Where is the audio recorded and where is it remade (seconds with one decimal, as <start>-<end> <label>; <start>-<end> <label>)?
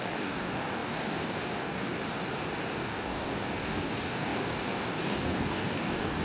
0.0-2.0 remade; 2.0-2.7 recorded; 2.7-6.2 remade